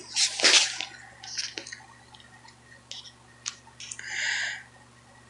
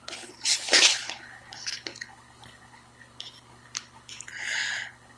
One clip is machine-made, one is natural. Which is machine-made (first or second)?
second